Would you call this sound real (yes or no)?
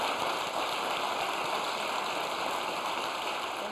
yes